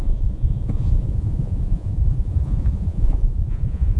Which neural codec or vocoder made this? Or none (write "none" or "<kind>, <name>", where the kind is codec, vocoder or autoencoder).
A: vocoder, Vocos